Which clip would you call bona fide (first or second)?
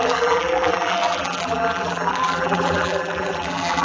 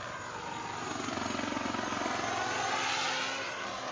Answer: second